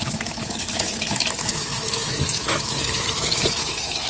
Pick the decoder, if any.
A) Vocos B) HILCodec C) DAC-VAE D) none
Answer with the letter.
C